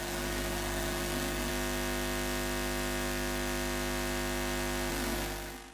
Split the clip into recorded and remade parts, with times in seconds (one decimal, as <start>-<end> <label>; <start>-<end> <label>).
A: 0.0-1.5 remade; 1.5-4.9 recorded; 4.9-5.7 remade